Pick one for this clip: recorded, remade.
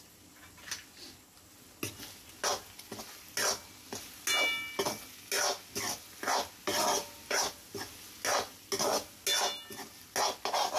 recorded